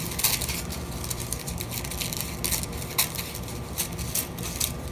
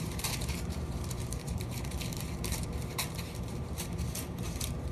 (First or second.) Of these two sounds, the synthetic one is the second